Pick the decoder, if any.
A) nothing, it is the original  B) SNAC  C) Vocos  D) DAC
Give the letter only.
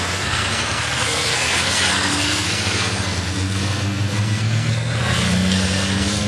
B